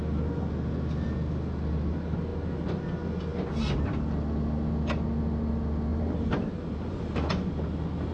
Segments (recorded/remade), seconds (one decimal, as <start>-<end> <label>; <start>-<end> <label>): 0.0-5.9 recorded; 5.9-7.3 remade; 7.3-8.1 recorded